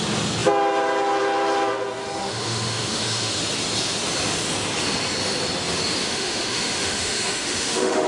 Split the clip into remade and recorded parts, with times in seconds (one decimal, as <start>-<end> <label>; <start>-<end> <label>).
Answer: 0.0-2.2 recorded; 2.2-3.4 remade; 3.4-6.0 recorded; 6.0-8.1 remade